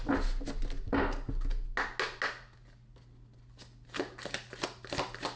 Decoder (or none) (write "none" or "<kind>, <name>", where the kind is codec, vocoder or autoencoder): none